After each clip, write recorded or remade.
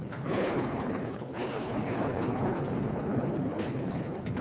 remade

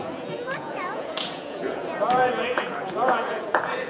remade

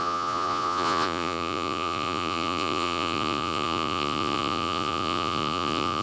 remade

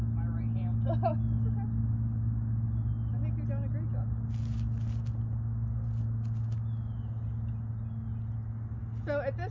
recorded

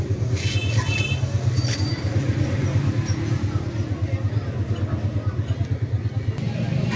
recorded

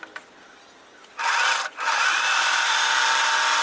recorded